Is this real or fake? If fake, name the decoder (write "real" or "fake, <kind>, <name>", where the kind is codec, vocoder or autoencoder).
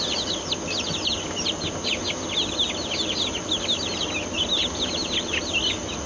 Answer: real